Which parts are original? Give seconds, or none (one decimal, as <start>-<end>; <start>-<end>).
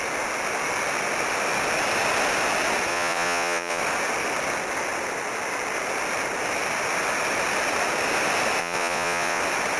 0.0-2.9; 3.8-8.6; 9.4-9.8